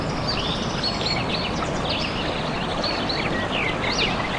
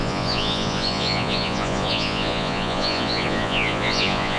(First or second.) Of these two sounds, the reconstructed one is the second